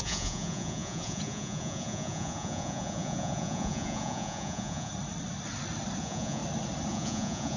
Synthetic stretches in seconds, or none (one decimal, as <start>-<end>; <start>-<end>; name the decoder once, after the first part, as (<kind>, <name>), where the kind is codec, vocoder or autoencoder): 0.0-4.9 (vocoder, Vocos); 6.0-6.4; 6.9-7.6